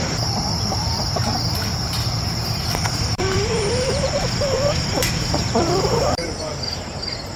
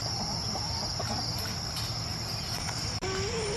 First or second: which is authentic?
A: second